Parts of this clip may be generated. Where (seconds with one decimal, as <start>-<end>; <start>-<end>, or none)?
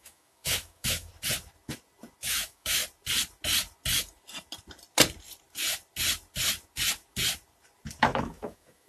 0.0-1.1; 2.2-2.8; 8.0-8.9